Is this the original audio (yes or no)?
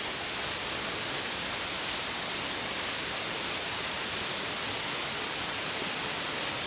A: yes